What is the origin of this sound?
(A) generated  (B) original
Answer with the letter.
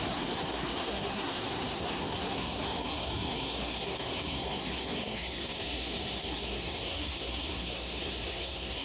A